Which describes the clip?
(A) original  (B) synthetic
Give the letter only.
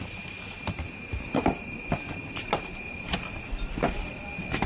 A